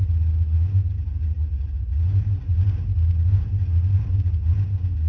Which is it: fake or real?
real